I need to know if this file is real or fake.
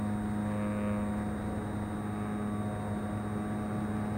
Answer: real